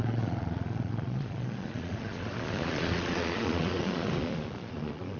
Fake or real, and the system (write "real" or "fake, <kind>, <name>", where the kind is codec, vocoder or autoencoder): fake, vocoder, Vocos